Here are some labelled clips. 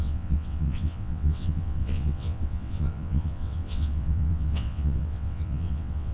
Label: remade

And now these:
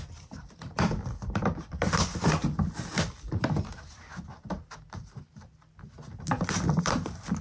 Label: recorded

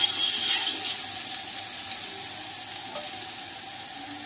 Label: recorded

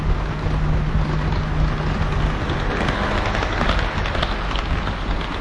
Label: recorded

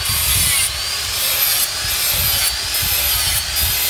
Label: recorded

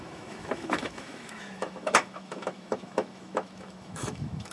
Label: remade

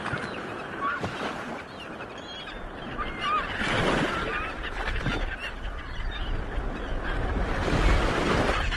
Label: recorded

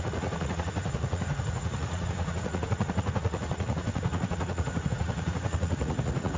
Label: remade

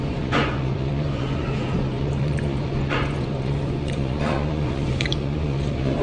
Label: remade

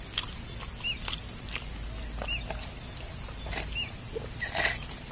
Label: recorded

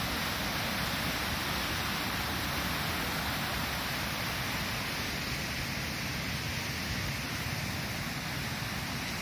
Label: recorded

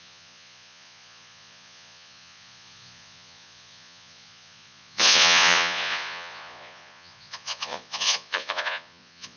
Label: remade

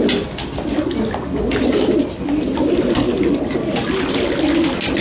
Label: recorded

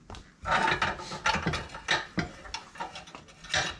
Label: recorded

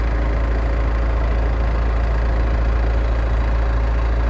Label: recorded